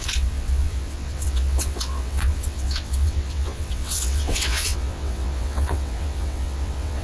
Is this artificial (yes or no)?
yes